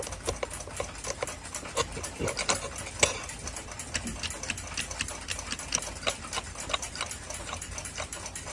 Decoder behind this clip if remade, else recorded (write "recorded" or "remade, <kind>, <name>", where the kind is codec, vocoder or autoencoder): recorded